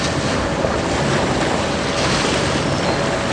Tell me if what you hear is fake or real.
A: real